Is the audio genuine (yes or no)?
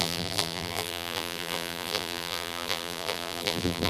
no